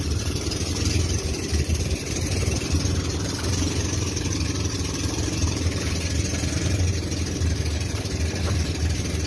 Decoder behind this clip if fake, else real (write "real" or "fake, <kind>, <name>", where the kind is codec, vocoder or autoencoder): fake, vocoder, BigVGAN v2